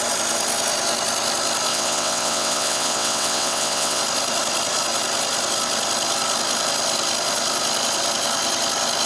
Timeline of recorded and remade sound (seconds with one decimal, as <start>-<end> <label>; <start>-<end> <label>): 0.0-1.7 recorded; 1.7-4.0 remade; 4.0-9.1 recorded